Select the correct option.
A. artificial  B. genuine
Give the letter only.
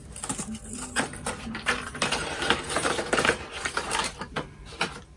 A